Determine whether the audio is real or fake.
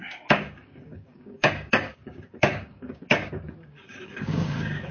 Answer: fake